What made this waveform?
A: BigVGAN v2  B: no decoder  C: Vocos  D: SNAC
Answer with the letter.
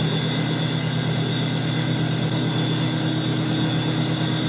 B